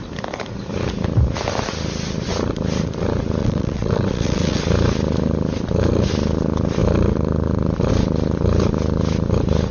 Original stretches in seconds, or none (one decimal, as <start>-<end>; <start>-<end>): 0.0-3.4; 4.6-9.7